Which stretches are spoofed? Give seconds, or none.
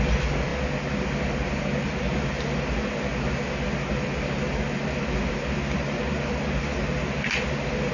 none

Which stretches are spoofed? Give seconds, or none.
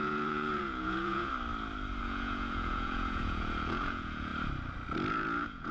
0.0-1.3 (vocoder, Vocos); 2.0-4.3; 5.1-5.7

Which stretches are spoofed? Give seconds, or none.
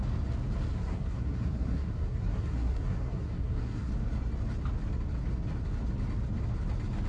0.7-3.9 (codec, SNAC)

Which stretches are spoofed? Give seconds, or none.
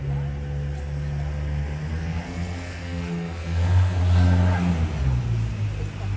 1.9-4.0 (codec, SNAC)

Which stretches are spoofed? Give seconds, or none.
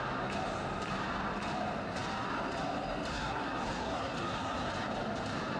3.1-4.7 (codec, SNAC)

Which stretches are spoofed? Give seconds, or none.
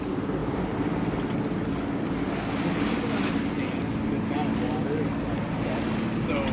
none